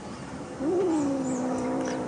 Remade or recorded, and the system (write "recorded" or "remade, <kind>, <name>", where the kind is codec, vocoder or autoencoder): recorded